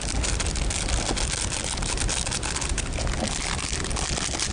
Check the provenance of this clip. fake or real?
real